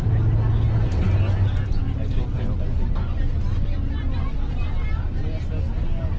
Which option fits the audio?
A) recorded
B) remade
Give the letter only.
A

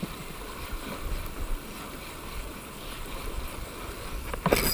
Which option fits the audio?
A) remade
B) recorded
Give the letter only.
B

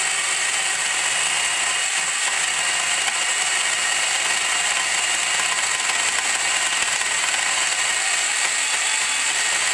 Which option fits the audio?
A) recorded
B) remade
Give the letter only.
A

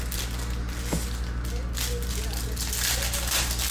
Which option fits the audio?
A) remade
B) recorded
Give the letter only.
B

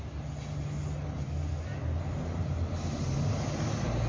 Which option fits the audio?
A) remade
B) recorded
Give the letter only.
B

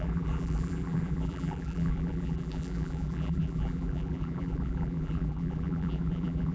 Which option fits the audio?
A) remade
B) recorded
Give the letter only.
A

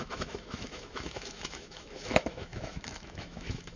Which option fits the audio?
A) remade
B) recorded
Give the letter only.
A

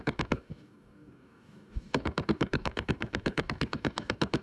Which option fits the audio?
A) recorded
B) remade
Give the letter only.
B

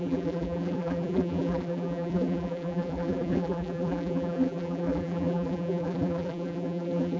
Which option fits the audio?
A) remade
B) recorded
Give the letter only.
A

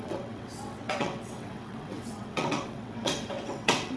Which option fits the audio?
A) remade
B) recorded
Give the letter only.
A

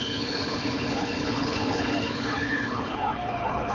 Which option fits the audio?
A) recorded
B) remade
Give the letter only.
B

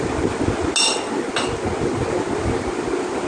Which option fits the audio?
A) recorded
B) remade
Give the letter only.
A